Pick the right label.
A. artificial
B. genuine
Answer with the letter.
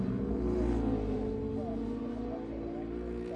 B